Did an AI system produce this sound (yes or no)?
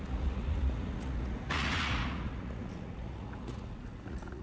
yes